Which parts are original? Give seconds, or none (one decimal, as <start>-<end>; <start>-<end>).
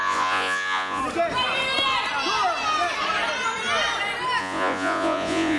1.0-4.4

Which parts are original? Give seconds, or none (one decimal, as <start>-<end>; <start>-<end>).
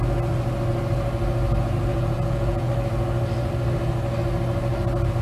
0.0-1.9; 2.7-5.2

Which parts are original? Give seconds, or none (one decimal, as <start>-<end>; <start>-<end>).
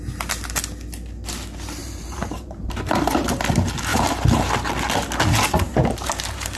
0.0-1.8; 3.4-3.9; 4.4-5.7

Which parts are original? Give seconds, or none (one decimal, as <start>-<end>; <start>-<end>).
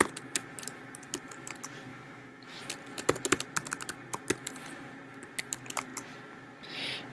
0.0-1.9; 2.6-7.1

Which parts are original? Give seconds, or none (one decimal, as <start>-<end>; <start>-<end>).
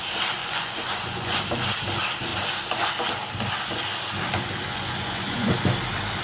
0.0-0.4; 1.4-4.7; 5.5-6.2